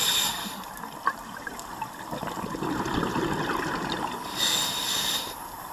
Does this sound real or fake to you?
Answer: real